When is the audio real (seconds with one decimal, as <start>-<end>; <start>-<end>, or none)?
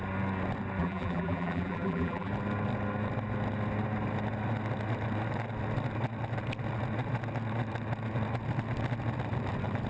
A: 0.0-0.8; 2.3-9.9